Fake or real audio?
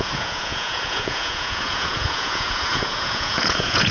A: fake